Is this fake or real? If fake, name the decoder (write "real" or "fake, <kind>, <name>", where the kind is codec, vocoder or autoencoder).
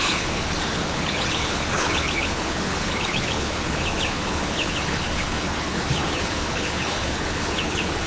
fake, codec, HILCodec